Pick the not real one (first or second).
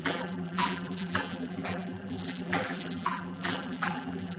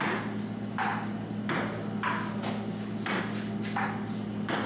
first